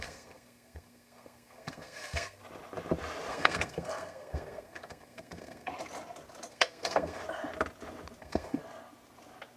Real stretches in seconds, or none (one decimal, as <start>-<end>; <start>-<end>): 2.4-3.3; 5.7-6.5; 7.2-8.2; 8.6-9.6